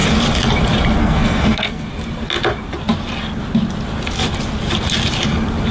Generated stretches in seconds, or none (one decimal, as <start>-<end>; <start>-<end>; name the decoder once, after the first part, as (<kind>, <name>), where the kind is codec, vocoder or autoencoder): 1.0-1.9 (codec, SNAC)